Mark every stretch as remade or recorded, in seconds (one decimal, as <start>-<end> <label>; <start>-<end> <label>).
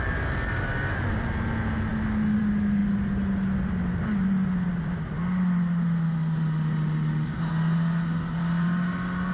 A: 0.0-9.3 recorded